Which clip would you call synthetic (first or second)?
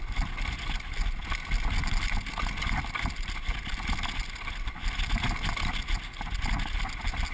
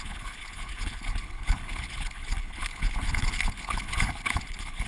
second